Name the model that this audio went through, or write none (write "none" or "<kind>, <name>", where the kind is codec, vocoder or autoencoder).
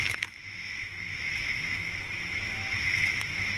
autoencoder, DAC-VAE